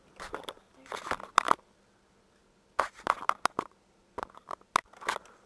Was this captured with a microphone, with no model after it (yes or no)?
yes